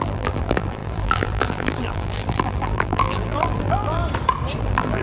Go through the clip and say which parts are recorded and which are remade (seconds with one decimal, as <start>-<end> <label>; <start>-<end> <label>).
0.0-4.0 remade; 4.0-4.6 recorded; 4.6-5.0 remade